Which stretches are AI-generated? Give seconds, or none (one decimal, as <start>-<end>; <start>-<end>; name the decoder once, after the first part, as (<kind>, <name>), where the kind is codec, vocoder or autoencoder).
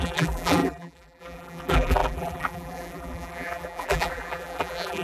0.0-5.0 (vocoder, BigVGAN v2)